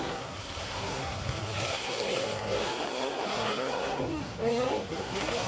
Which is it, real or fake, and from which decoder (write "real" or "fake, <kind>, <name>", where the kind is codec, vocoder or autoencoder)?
fake, codec, SNAC